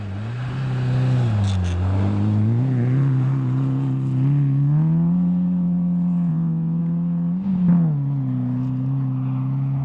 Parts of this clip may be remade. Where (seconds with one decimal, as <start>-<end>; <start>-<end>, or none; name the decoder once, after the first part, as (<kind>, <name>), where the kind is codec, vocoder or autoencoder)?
6.3-6.8 (vocoder, Vocos)

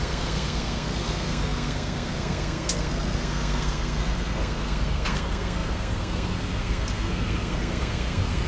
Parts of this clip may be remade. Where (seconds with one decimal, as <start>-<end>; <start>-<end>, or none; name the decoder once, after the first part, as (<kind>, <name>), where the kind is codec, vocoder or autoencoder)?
0.0-8.5 (codec, SNAC)

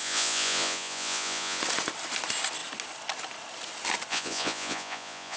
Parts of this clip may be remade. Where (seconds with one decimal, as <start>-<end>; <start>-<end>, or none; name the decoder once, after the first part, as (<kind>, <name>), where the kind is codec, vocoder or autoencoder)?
0.0-1.6 (vocoder, Vocos); 4.1-5.4

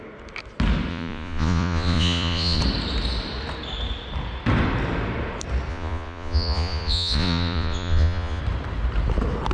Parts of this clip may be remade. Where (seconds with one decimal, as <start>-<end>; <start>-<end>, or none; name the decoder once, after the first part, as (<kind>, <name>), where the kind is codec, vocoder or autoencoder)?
0.9-2.6 (vocoder, Vocos); 5.7-8.4